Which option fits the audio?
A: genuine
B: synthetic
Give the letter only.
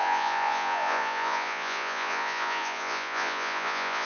B